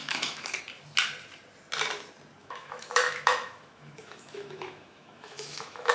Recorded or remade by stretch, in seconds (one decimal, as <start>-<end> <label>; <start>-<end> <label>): 0.0-0.6 remade; 0.6-2.4 recorded; 2.4-5.9 remade